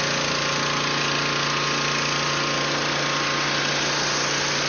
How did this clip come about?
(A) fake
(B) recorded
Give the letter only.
B